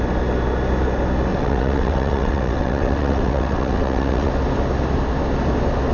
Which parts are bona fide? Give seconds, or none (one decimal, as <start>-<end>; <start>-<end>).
0.0-1.3; 4.3-5.9

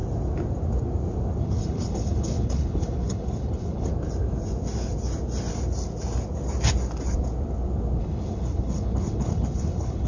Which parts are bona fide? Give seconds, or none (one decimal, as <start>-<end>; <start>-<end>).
0.0-1.4; 3.9-8.0